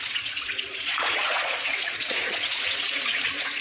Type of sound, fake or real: fake